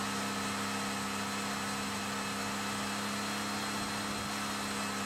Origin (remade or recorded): recorded